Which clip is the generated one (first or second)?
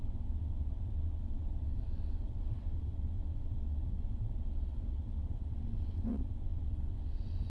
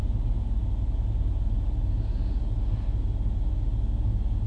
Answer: first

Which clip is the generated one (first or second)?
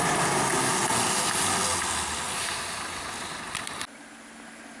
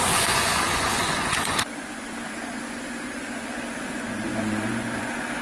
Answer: second